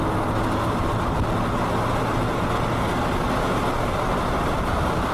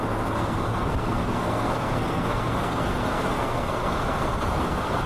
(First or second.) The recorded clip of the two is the first